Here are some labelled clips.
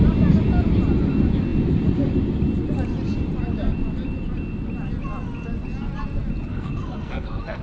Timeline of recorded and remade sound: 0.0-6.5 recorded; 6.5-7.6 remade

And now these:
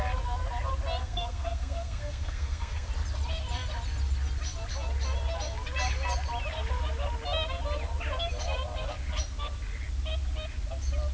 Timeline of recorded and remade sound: 0.0-1.0 recorded; 1.0-2.9 remade; 2.9-11.1 recorded

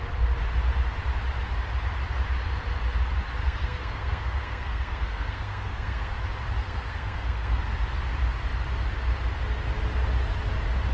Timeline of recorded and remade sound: 0.0-3.4 recorded; 3.4-6.1 remade; 6.1-6.6 recorded; 6.6-7.6 remade; 7.6-10.9 recorded